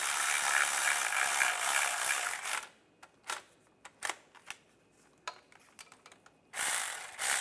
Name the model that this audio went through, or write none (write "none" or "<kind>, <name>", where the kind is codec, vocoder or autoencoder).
none